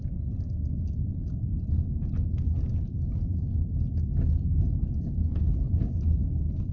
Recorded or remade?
recorded